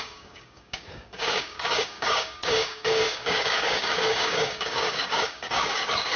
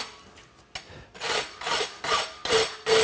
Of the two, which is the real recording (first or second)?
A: second